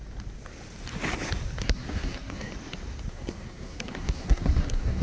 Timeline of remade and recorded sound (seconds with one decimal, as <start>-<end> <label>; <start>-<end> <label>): 0.0-1.6 recorded; 1.6-2.5 remade; 2.5-3.1 recorded; 3.1-5.0 remade